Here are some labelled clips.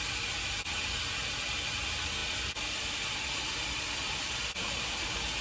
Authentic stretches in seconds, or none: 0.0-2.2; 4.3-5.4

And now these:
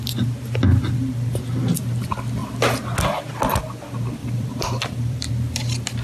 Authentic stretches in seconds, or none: 0.0-4.2; 5.3-6.0

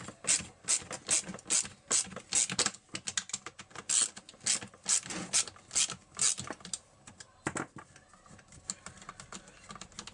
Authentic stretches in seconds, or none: 0.0-10.1

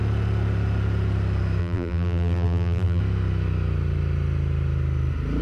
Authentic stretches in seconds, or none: 0.0-1.6; 3.0-5.4